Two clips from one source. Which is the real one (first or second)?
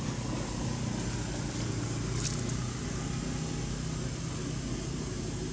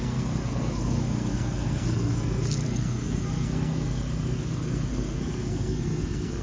first